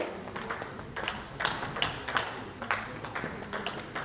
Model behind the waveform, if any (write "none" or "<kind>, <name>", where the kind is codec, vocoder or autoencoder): none